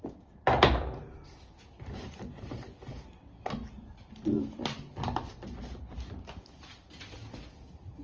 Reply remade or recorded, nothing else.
recorded